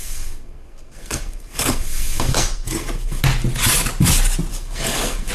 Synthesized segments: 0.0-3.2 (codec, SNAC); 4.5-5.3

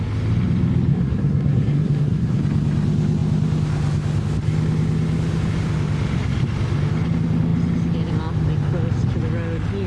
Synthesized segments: 0.9-2.4 (codec, SNAC)

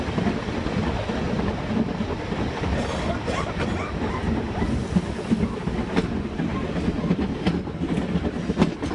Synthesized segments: none

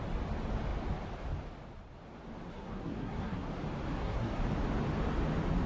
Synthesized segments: 2.5-3.5 (codec, SNAC); 3.9-4.4

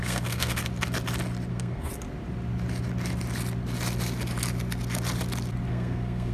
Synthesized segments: 0.0-0.6 (codec, SNAC); 1.5-1.9; 5.7-6.3